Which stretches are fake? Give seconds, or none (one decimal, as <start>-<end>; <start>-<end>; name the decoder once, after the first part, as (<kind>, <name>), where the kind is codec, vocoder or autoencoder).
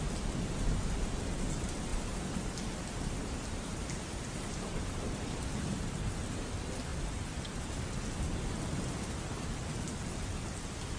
1.9-5.8 (vocoder, BigVGAN v2); 6.9-7.7